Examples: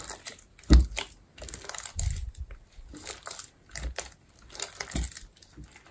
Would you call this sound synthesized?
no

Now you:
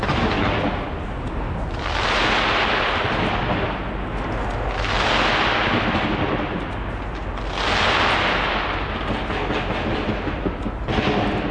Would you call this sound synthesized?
no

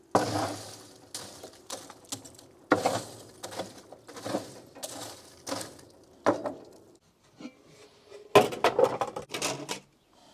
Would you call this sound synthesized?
no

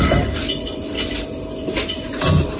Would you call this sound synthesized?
yes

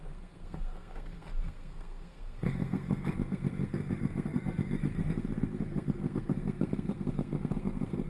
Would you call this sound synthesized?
yes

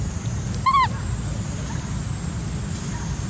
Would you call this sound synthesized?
no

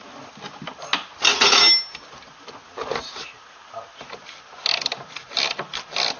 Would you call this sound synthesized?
no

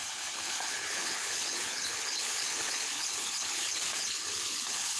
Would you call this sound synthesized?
yes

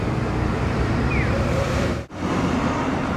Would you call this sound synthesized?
yes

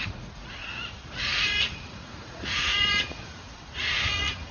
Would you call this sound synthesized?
yes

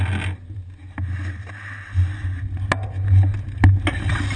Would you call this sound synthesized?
no